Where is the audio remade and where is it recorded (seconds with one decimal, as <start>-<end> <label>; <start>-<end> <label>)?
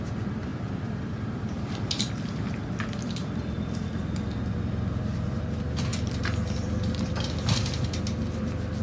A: 0.0-0.5 recorded; 0.5-5.4 remade; 5.4-5.9 recorded; 5.9-8.0 remade; 8.0-8.8 recorded